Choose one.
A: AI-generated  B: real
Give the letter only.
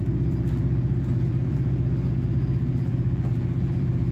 A